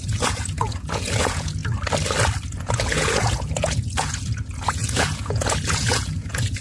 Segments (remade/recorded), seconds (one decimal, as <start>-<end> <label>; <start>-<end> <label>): 0.0-1.6 remade; 1.6-2.6 recorded; 2.6-6.6 remade